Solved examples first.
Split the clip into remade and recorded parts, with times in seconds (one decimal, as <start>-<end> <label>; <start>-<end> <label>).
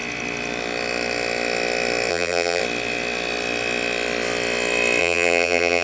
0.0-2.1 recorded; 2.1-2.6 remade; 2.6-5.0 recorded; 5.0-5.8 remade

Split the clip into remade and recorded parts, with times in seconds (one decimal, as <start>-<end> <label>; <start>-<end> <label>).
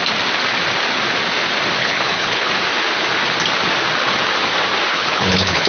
0.0-1.8 recorded; 1.8-2.5 remade; 2.5-4.9 recorded; 4.9-5.7 remade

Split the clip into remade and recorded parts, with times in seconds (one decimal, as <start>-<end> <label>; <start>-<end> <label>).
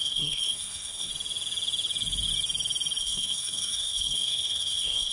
0.0-1.1 remade; 1.1-3.0 recorded; 3.0-5.1 remade